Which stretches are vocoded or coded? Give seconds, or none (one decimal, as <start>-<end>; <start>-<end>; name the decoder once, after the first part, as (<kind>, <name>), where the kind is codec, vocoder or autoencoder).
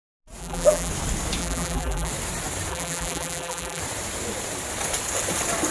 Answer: 0.4-0.9 (vocoder, BigVGAN v2); 1.4-2.1; 2.7-3.8